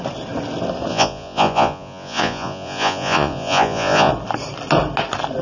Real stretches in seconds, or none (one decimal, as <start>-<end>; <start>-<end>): 0.0-0.9; 4.1-5.4